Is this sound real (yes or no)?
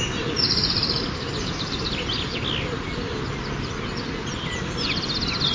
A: yes